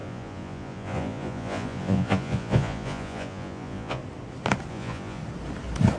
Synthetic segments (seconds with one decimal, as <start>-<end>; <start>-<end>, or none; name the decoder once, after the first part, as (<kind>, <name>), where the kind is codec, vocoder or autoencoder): 0.0-4.0 (vocoder, Vocos); 4.7-5.2

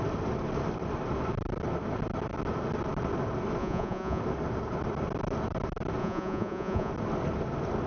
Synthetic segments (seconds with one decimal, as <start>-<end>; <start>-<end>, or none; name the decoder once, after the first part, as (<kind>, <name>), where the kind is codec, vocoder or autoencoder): 3.6-4.2 (vocoder, Vocos); 6.0-6.9